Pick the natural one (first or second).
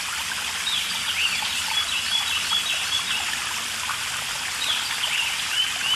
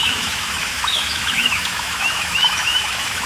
first